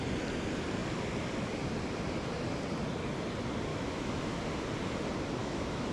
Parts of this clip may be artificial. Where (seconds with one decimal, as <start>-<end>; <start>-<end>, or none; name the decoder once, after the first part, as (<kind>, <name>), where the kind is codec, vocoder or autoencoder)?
3.7-4.4 (autoencoder, DAC-VAE); 5.4-5.9